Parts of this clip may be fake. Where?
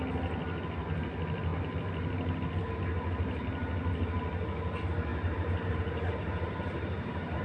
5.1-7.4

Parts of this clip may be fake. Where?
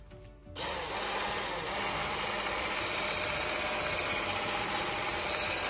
none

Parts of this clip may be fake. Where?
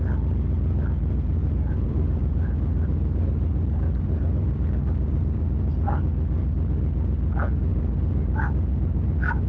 1.4-5.4; 7.7-9.5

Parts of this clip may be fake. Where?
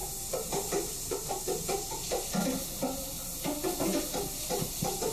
none